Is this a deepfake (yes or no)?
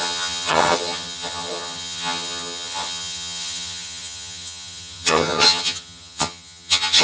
yes